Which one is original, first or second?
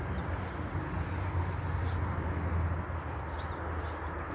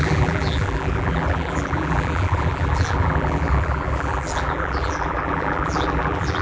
first